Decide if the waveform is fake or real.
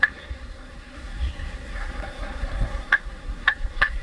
fake